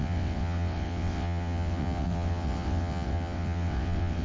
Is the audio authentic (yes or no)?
no